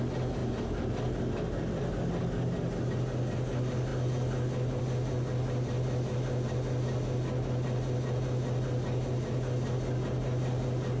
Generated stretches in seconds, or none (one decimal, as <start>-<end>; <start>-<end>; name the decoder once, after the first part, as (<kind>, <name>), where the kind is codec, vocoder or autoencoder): none